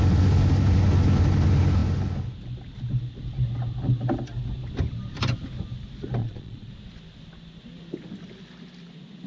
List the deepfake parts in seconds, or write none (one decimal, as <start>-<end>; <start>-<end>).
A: 6.2-6.7